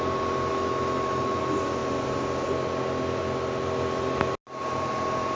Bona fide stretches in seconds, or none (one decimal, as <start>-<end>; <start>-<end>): 0.0-0.5; 1.4-5.3